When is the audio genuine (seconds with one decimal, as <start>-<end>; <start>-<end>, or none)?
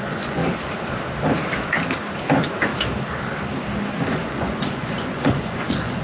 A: 0.4-2.3; 2.7-4.0